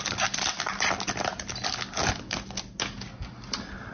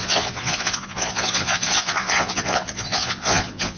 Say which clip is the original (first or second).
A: first